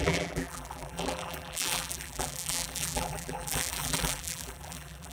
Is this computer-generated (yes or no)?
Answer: yes